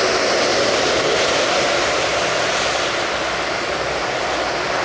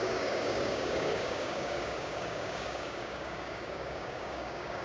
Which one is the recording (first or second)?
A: first